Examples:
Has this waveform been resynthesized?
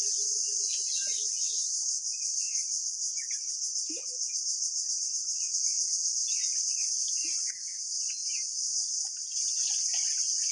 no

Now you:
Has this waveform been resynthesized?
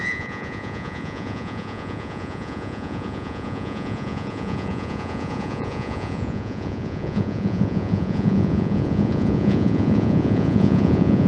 yes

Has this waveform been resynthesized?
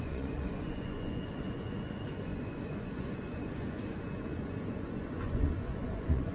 yes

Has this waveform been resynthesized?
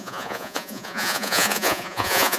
yes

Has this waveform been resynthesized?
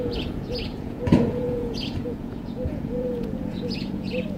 yes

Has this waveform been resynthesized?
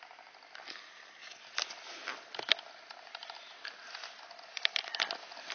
no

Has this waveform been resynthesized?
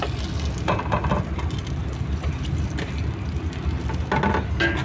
no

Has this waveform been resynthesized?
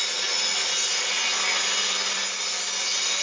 no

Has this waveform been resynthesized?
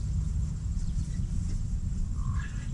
no